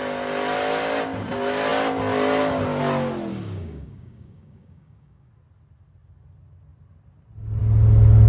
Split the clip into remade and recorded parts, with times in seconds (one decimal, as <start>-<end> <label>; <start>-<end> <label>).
0.0-3.3 recorded; 3.3-5.3 remade; 5.3-8.3 recorded